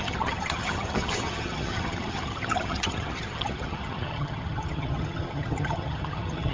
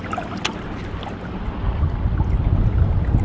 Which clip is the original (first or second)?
second